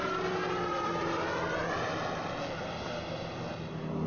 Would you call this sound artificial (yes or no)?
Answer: no